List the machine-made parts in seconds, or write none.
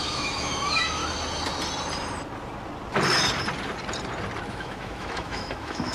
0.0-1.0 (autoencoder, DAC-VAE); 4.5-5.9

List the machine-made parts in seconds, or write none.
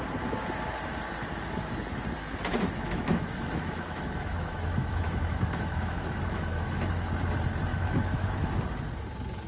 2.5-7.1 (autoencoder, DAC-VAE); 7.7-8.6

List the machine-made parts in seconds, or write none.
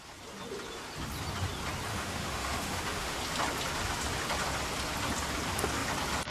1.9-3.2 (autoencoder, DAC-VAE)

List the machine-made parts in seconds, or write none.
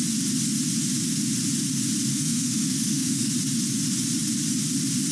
2.1-3.3 (autoencoder, DAC-VAE)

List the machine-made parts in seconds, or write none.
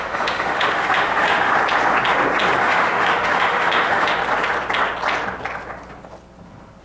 0.0-1.6 (autoencoder, DAC-VAE); 2.6-4.2